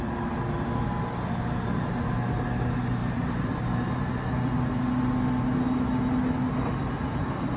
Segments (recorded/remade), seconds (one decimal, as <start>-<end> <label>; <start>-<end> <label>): 0.0-3.0 recorded; 3.0-3.9 remade; 3.9-7.6 recorded